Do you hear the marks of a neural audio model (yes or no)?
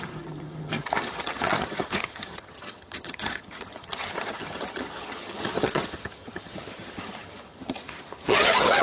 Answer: yes